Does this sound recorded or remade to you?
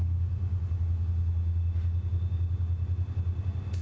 recorded